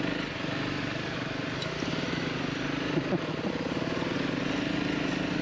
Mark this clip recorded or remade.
recorded